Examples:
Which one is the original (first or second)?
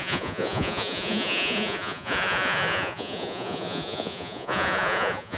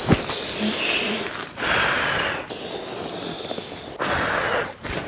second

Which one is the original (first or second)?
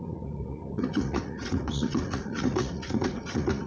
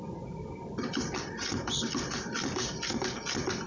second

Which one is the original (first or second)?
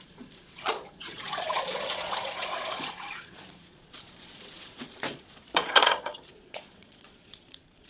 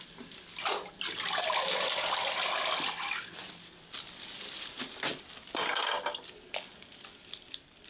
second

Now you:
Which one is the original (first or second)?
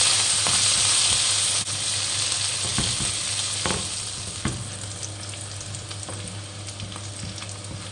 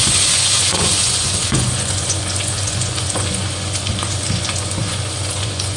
first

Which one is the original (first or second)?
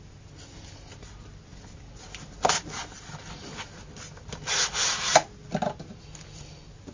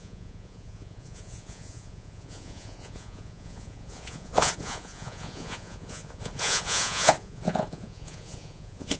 first